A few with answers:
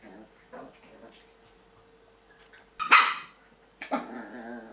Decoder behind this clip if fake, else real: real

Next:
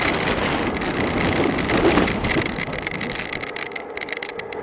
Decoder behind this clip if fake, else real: real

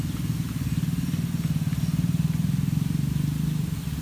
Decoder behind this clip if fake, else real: real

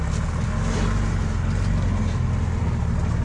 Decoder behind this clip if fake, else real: real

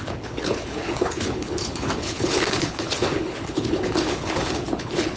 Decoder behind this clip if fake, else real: fake, codec, HILCodec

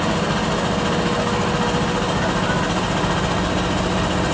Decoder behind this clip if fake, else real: real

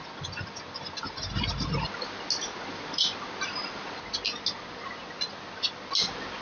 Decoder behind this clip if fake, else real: real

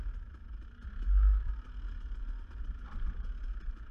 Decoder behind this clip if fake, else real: real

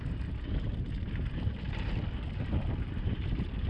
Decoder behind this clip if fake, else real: real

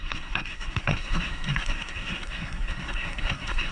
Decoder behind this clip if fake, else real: fake, codec, SNAC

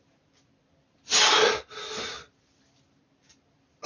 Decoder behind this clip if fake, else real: real